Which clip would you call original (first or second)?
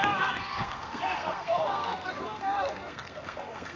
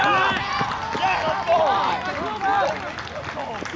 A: second